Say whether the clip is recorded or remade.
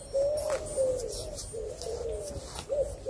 recorded